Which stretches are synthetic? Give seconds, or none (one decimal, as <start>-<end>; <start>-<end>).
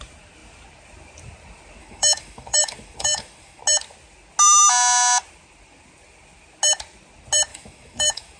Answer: 1.8-3.6; 7.5-8.4